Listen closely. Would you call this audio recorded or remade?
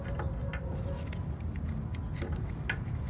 recorded